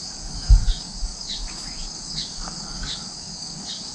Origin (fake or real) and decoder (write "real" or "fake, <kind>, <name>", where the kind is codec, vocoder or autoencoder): fake, codec, DAC